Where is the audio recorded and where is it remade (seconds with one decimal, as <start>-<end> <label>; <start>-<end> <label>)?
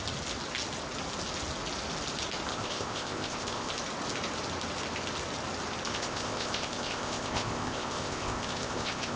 0.0-2.5 recorded; 2.5-3.7 remade; 3.7-5.9 recorded; 5.9-9.2 remade